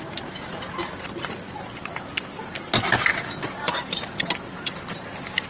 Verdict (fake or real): real